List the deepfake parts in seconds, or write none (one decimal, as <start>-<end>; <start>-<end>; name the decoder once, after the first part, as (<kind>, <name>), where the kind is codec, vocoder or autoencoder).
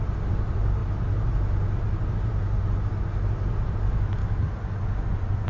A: none